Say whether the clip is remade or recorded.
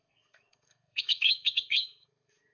remade